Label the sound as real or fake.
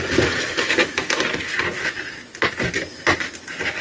real